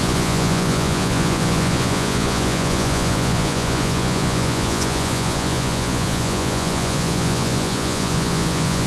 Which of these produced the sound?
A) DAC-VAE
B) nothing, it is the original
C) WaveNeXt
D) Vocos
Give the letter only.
D